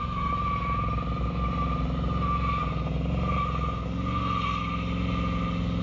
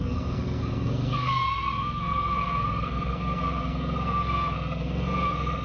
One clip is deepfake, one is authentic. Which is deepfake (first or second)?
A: second